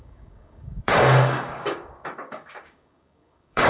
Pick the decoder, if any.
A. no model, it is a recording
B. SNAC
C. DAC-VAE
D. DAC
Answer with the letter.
D